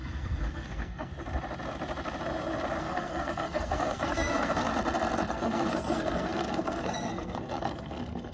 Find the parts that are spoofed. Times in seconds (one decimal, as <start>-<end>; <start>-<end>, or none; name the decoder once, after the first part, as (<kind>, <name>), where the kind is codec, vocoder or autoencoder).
0.0-1.1 (codec, SNAC); 2.8-4.7; 5.3-8.3